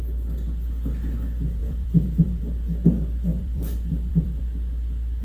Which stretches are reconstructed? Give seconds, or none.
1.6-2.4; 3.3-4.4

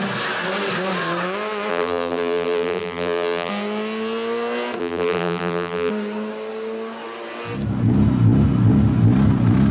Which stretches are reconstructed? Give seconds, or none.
1.7-3.5; 4.8-5.9